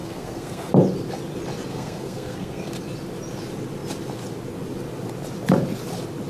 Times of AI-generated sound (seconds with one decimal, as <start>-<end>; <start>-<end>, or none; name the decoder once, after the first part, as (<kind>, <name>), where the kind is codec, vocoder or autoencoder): 0.0-0.7 (codec, SNAC); 1.7-2.7